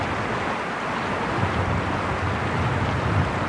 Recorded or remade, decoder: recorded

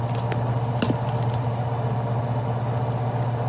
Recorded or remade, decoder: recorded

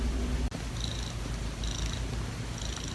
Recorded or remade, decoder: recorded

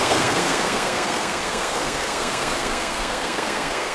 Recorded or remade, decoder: remade, codec, SNAC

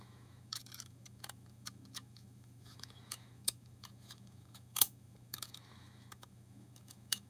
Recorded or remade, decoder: remade, autoencoder, DAC-VAE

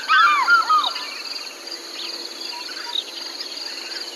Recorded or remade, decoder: recorded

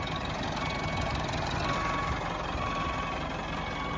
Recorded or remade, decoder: recorded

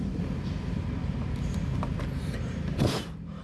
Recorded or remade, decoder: remade, vocoder, BigVGAN v2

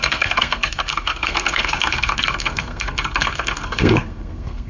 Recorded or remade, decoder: remade, codec, SNAC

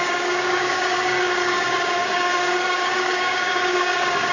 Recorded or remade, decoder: remade, codec, DAC